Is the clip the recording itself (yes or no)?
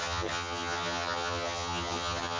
no